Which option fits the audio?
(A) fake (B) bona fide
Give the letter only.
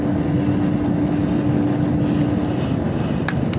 B